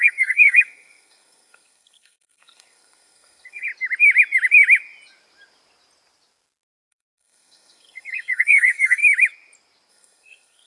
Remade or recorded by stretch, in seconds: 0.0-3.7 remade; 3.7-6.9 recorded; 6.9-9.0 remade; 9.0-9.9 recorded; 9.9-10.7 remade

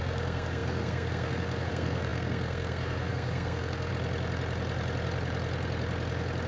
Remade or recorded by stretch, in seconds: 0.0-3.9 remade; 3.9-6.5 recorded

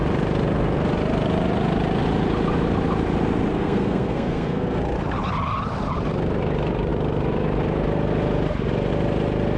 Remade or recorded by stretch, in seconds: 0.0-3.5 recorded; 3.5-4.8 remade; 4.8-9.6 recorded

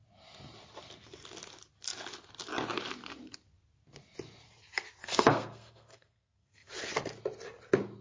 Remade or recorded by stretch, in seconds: 0.0-5.0 recorded; 5.0-6.7 remade; 6.7-8.0 recorded